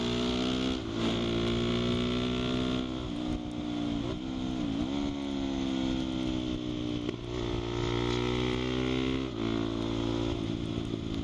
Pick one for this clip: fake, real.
real